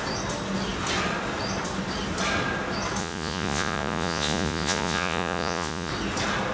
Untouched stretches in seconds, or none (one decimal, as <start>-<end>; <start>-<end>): 0.0-3.0; 5.9-6.5